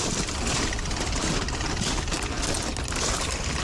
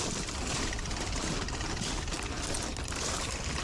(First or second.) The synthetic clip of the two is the second